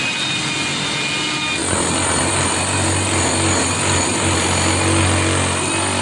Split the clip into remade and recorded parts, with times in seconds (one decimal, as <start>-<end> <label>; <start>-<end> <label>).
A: 0.0-6.0 recorded

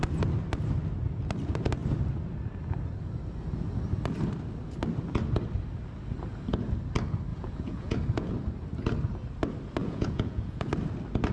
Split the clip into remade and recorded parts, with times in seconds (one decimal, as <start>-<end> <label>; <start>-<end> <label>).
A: 0.0-7.3 recorded; 7.3-8.3 remade; 8.3-9.8 recorded; 9.8-10.7 remade; 10.7-11.3 recorded

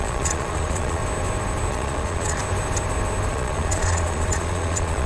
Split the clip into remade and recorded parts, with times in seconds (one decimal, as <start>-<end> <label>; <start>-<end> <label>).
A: 0.0-1.0 remade; 1.0-1.7 recorded; 1.7-2.4 remade; 2.4-3.3 recorded; 3.3-5.1 remade

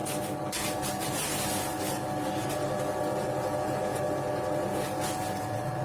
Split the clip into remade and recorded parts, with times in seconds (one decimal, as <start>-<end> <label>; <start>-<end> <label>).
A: 0.0-3.1 recorded; 3.1-4.0 remade; 4.0-5.8 recorded

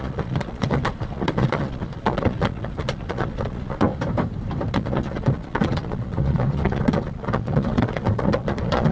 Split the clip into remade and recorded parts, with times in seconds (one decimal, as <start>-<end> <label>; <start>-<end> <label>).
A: 0.0-3.9 remade; 3.9-4.7 recorded; 4.7-8.9 remade